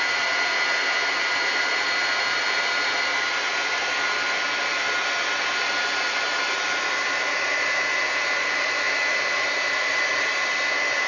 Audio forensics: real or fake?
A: real